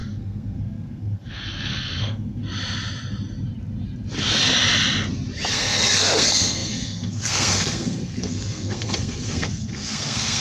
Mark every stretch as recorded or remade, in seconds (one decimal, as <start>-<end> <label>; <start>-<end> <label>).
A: 0.0-2.4 remade; 2.4-5.5 recorded; 5.5-10.4 remade

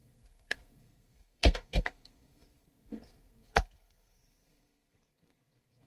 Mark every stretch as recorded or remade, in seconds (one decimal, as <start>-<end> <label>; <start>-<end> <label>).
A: 0.0-5.9 remade

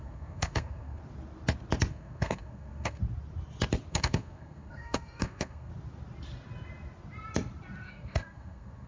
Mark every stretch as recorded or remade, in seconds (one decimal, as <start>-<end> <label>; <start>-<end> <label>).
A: 0.0-1.0 remade; 1.0-1.9 recorded; 1.9-3.0 remade; 3.0-3.9 recorded; 3.9-5.7 remade; 5.7-7.9 recorded; 7.9-8.9 remade

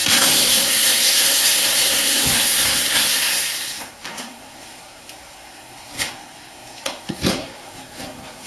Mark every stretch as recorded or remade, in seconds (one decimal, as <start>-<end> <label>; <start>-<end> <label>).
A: 0.0-8.5 remade

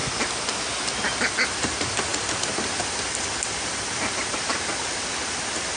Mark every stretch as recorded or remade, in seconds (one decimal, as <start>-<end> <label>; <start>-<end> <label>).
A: 0.0-5.8 recorded

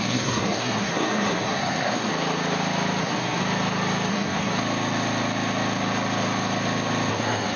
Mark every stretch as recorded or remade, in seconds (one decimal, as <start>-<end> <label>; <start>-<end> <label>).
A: 0.0-2.1 remade; 2.1-3.0 recorded; 3.0-3.4 remade; 3.4-4.1 recorded; 4.1-4.5 remade; 4.5-7.1 recorded; 7.1-7.6 remade

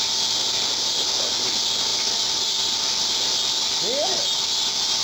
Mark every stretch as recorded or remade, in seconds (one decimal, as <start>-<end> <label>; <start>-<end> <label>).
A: 0.0-5.0 recorded